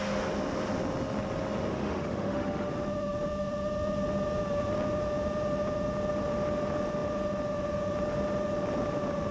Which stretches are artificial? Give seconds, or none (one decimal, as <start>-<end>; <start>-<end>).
1.7-2.7

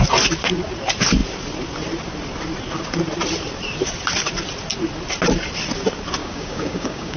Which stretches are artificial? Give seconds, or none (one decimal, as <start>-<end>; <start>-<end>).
6.2-7.2

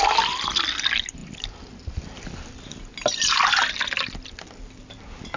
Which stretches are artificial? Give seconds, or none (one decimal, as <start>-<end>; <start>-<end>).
none

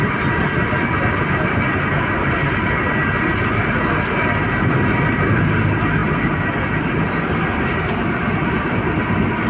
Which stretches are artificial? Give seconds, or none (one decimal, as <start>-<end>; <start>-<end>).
6.0-7.8

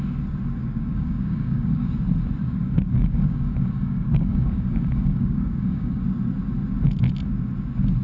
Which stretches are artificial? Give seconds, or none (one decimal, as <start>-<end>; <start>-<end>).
0.6-1.9; 2.4-6.0

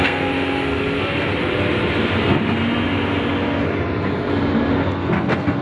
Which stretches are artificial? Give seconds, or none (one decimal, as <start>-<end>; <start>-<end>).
0.0-1.3; 4.7-5.6

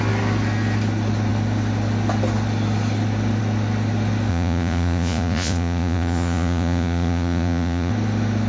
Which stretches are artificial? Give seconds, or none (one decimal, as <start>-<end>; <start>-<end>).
4.3-7.9